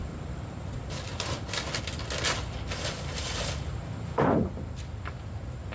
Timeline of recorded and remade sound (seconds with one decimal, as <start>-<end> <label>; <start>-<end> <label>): 0.0-1.1 remade; 1.1-5.7 recorded